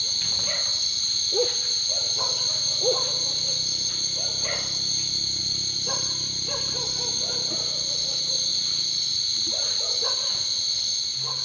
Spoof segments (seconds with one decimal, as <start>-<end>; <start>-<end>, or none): 0.7-3.9; 5.4-6.8; 8.5-10.0